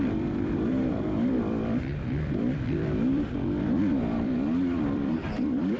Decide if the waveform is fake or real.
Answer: fake